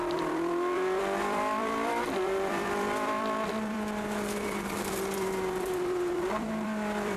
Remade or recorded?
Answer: remade